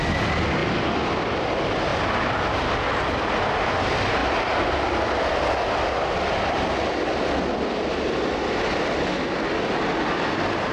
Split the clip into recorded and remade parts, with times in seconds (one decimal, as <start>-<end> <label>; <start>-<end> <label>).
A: 0.0-10.7 recorded